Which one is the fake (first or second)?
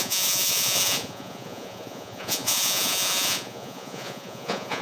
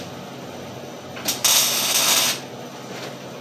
first